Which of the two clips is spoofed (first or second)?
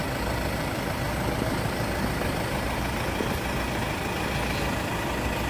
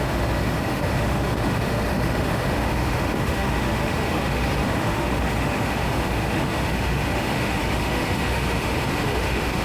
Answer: second